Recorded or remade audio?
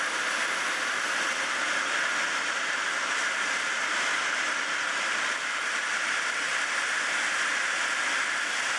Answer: remade